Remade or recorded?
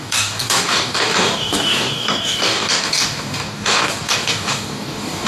remade